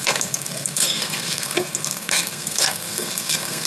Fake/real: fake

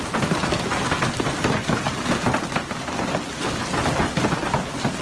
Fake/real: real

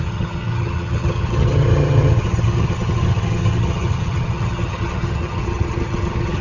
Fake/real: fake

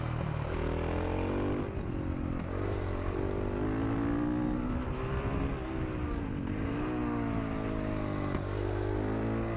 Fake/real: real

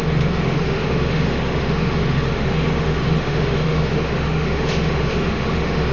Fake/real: fake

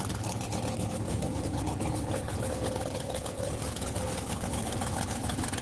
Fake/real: fake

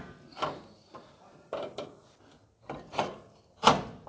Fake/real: real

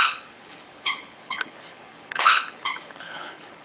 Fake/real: fake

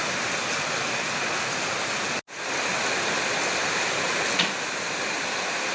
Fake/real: real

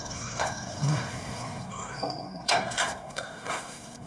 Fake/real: fake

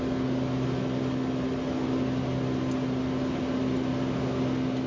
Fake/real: real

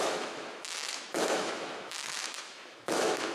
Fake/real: fake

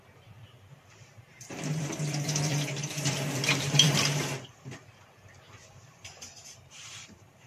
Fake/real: fake